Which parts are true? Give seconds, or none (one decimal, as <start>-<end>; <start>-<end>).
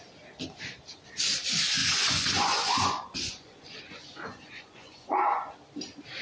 0.0-1.8; 5.5-6.2